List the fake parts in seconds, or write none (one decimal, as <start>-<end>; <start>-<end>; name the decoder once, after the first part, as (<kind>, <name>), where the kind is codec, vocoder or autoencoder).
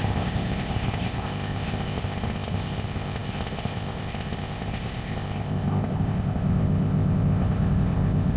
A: 0.0-8.4 (codec, ZipCodec)